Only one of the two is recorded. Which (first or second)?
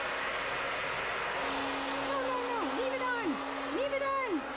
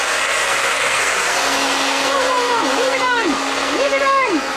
first